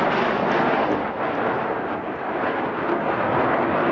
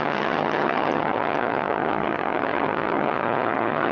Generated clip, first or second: second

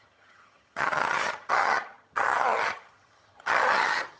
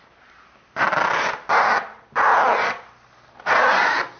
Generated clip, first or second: first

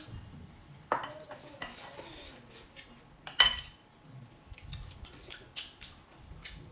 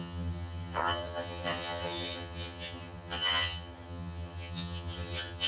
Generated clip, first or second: second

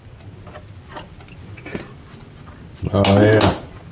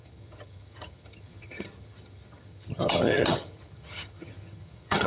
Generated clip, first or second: second